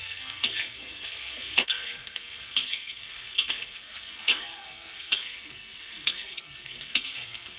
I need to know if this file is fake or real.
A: fake